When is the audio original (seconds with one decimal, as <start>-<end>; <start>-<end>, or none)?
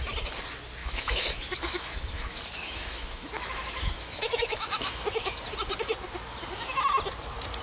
0.0-0.8; 5.4-7.6